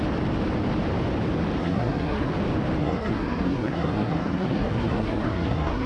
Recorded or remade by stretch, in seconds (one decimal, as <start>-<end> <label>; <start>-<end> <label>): 0.0-1.6 recorded; 1.6-2.3 remade; 2.3-2.8 recorded; 2.8-5.9 remade

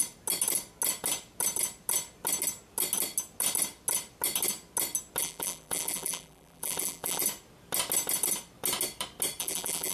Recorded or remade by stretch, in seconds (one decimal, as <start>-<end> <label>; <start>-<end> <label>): 0.0-5.2 recorded; 5.2-7.2 remade; 7.2-9.4 recorded; 9.4-9.9 remade